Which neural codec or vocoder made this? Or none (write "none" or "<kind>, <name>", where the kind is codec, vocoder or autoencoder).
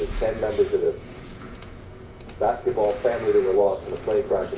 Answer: vocoder, Vocos